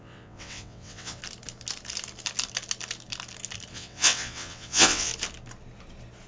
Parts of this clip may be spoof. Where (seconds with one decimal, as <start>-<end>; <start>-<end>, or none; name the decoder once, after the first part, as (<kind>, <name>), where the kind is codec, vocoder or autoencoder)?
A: 0.0-1.2 (vocoder, WaveNeXt); 3.7-5.1